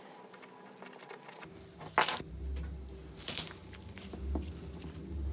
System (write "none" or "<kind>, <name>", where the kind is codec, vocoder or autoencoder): none